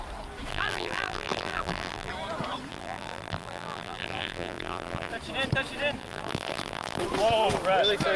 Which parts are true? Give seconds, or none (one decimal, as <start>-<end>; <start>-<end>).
0.0-0.5; 2.1-2.7; 5.1-6.0; 7.0-8.2